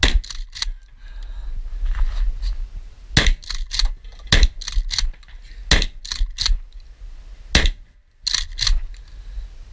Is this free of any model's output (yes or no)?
yes